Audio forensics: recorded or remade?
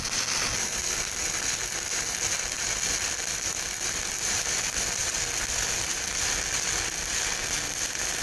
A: recorded